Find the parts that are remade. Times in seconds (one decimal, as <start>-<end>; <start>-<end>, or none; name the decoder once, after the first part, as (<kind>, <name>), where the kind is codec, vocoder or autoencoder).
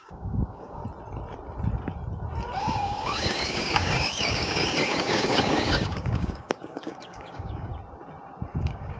0.0-0.8 (codec, DAC); 2.6-7.7; 8.6-9.0